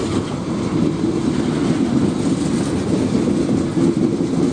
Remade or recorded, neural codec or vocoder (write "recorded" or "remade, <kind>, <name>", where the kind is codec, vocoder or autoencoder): recorded